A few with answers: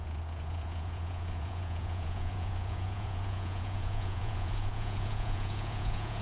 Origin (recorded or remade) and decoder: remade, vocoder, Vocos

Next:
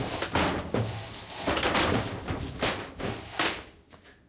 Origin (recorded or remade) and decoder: recorded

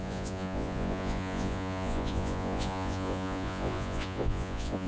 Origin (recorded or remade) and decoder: remade, vocoder, Vocos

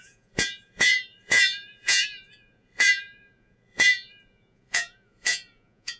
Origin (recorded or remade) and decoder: remade, vocoder, Vocos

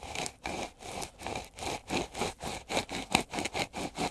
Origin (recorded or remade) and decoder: recorded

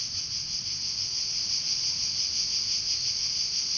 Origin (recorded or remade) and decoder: recorded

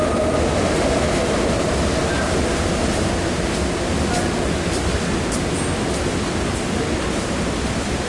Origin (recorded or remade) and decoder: recorded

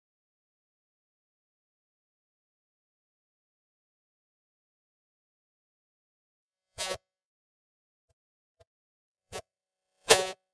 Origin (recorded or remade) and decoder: remade, vocoder, Vocos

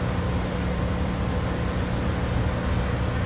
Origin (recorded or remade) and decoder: recorded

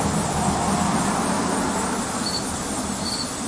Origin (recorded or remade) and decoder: recorded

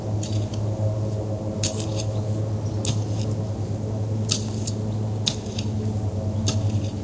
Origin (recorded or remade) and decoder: recorded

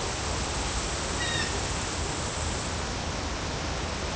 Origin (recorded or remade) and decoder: recorded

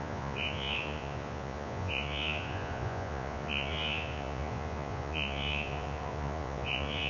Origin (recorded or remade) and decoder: remade, vocoder, Vocos